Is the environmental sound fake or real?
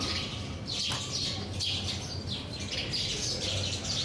real